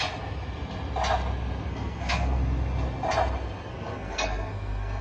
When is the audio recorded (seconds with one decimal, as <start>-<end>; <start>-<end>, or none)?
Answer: 0.0-1.7; 2.4-3.7

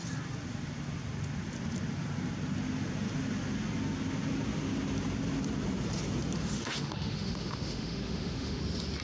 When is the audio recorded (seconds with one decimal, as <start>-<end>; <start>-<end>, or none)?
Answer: 0.0-6.4; 8.6-9.0

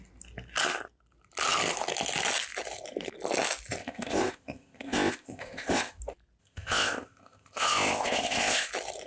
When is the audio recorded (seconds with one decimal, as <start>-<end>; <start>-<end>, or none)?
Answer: 0.0-3.8; 6.0-6.4; 8.7-9.1

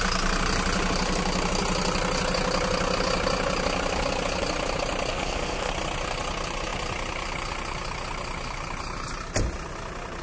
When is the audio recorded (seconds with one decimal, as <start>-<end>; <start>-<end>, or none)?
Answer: 0.0-5.1; 5.7-10.2